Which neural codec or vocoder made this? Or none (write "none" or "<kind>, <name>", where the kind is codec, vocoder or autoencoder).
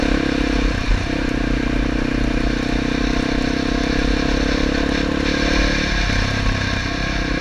none